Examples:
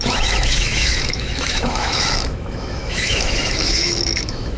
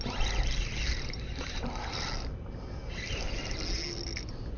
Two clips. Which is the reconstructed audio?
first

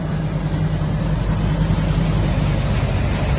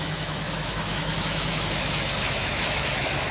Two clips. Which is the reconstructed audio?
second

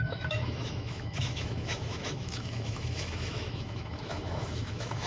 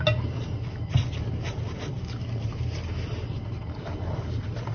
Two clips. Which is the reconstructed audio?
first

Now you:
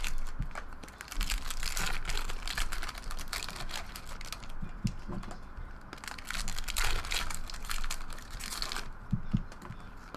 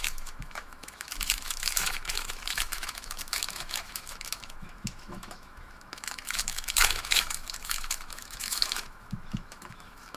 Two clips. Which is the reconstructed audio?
second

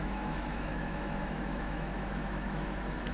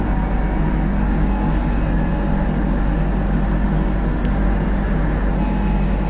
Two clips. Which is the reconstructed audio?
first